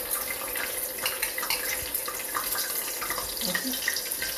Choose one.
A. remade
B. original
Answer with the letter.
B